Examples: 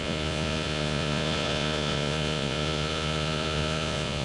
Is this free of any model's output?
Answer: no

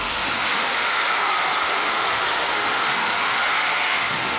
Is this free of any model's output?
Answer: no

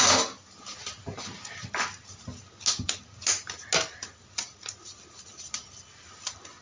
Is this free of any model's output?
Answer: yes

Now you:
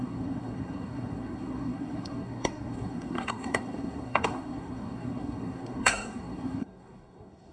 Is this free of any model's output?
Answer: no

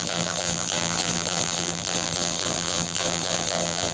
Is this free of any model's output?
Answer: no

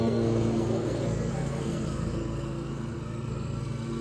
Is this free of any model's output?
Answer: no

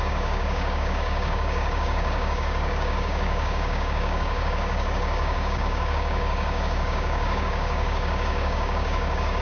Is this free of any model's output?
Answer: no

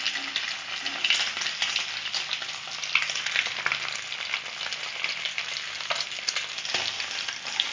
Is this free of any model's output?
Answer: yes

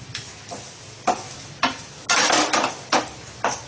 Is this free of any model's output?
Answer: yes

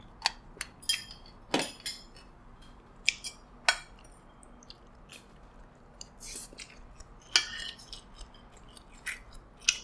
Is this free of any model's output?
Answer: yes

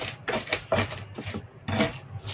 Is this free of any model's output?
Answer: yes